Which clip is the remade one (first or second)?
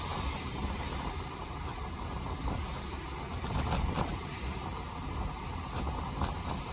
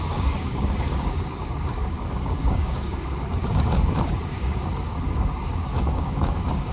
second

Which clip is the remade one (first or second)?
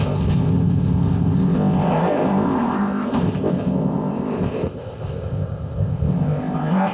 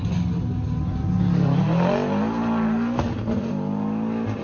first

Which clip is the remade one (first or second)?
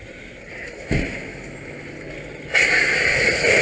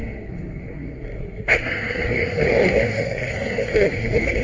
second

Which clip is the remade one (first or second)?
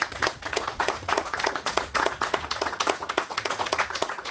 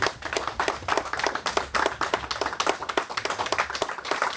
first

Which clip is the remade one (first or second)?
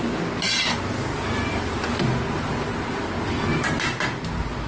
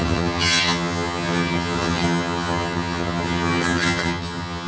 second